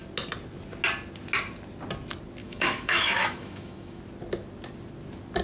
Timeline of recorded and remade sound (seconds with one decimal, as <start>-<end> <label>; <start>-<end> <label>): 0.0-2.4 recorded; 2.4-4.0 remade; 4.0-5.4 recorded